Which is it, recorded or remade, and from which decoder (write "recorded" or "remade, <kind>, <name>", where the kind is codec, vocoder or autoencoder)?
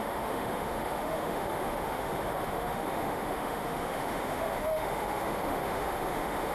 remade, autoencoder, DAC-VAE